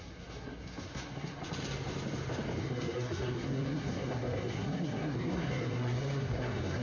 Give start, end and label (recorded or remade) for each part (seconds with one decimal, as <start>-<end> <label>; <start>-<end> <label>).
0.0-1.4 remade; 1.4-2.6 recorded; 2.6-6.8 remade

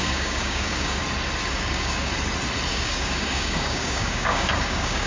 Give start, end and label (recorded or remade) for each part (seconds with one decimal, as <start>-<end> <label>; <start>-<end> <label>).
0.0-1.0 remade; 1.0-1.5 recorded; 1.5-2.1 remade; 2.1-2.7 recorded; 2.7-5.1 remade

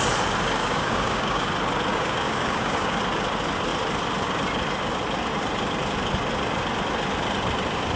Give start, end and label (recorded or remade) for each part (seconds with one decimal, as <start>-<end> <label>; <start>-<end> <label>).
0.0-0.6 recorded; 0.6-1.5 remade; 1.5-1.9 recorded; 1.9-3.0 remade; 3.0-8.0 recorded

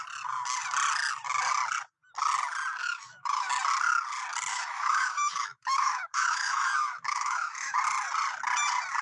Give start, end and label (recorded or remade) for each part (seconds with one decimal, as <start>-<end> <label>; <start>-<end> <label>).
0.0-2.8 recorded; 2.8-3.5 remade; 3.5-4.5 recorded; 4.5-7.8 remade; 7.8-9.0 recorded

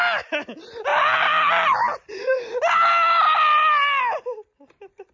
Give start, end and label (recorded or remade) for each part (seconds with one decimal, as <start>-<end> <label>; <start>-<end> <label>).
0.0-5.1 recorded

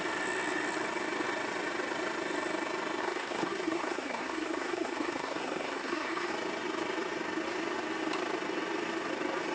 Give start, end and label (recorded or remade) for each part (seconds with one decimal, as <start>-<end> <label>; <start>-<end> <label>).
0.0-3.0 recorded; 3.0-6.3 remade; 6.3-9.5 recorded

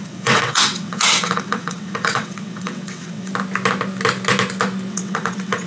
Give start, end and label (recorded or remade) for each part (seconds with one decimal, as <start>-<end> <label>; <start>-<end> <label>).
0.0-3.3 remade; 3.3-4.9 recorded; 4.9-5.7 remade